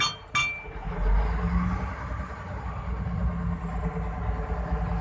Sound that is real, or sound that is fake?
real